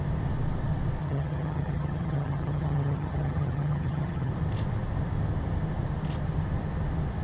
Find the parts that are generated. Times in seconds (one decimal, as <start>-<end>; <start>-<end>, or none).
1.0-4.3